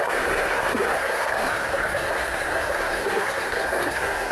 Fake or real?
fake